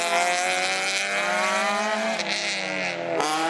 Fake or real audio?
real